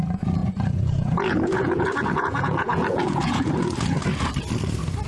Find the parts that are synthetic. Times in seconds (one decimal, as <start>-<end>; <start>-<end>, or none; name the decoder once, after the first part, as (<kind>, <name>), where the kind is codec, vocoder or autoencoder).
0.4-3.5 (vocoder, Vocos)